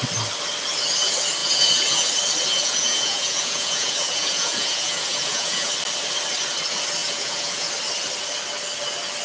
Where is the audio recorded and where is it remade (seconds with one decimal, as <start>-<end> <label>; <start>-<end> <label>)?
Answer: 0.0-1.4 recorded; 1.4-2.1 remade; 2.1-2.5 recorded; 2.5-5.7 remade; 5.7-7.0 recorded; 7.0-7.7 remade; 7.7-9.2 recorded